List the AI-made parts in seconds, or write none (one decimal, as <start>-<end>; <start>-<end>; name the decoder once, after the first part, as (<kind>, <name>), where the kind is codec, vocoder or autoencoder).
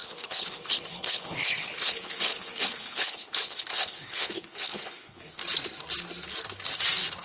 0.0-5.4 (codec, HILCodec)